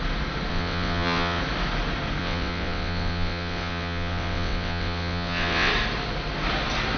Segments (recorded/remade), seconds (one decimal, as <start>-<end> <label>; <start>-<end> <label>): 0.0-0.5 recorded; 0.5-1.4 remade; 1.4-2.2 recorded; 2.2-5.7 remade; 5.7-7.0 recorded